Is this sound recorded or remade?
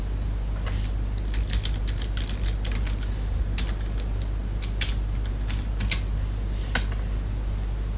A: recorded